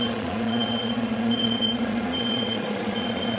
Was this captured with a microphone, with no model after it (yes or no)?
no